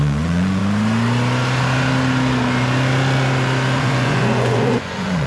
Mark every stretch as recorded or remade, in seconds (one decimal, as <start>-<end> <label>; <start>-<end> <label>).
0.0-0.6 remade; 0.6-3.8 recorded; 3.8-5.3 remade